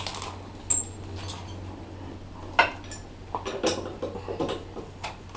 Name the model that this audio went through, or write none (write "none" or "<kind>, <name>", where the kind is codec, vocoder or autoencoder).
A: none